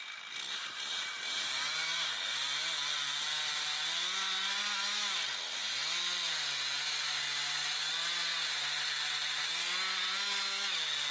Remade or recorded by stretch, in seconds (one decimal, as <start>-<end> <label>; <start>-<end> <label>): 0.0-11.1 recorded